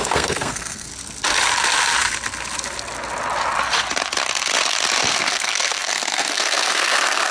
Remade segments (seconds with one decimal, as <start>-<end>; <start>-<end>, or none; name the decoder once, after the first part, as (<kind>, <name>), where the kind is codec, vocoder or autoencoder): 0.0-0.9 (codec, SNAC); 5.1-7.3